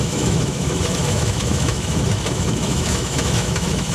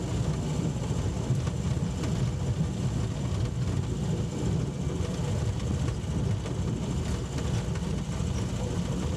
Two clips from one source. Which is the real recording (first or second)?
second